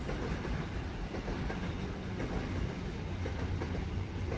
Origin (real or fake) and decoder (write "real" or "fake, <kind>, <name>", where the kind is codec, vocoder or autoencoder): fake, vocoder, BigVGAN v2